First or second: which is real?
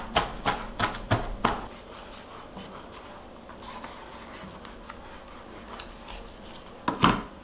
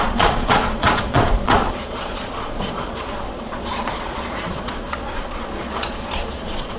first